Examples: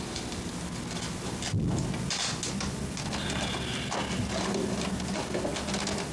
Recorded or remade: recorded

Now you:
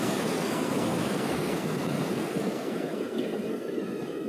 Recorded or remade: remade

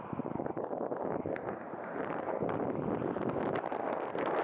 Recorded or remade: recorded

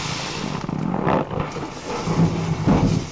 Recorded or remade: recorded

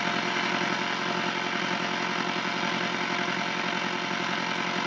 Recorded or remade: recorded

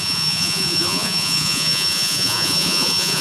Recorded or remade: remade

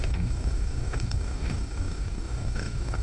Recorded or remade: remade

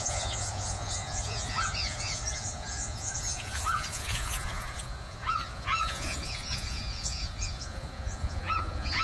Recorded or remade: remade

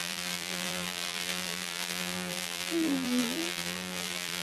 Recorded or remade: remade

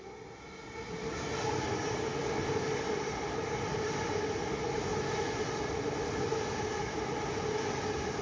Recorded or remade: recorded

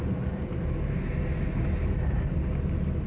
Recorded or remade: recorded